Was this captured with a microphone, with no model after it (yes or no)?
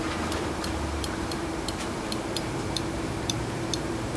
no